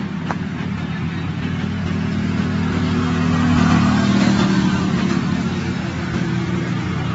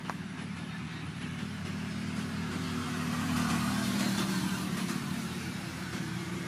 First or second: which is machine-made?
second